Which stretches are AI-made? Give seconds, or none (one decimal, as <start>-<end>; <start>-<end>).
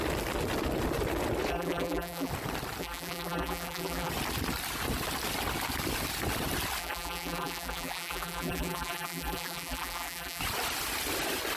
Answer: 1.5-2.3; 2.8-4.1; 6.8-10.4